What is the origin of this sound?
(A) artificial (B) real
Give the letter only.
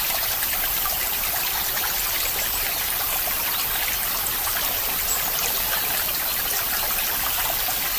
A